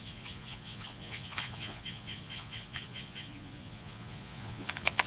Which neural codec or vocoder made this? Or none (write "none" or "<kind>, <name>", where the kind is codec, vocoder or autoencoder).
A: vocoder, Vocos